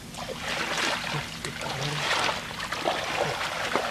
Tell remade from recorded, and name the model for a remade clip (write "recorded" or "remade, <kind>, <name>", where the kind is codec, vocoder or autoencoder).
recorded